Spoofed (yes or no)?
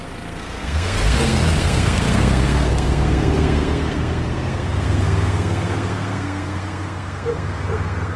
yes